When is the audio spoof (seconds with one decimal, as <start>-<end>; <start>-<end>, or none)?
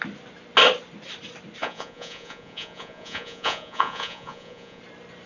1.6-4.8